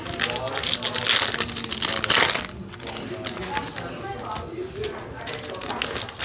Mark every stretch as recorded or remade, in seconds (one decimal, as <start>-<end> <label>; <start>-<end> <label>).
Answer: 0.0-6.2 recorded